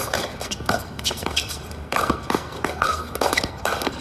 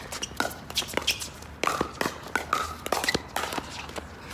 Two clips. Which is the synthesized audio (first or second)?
first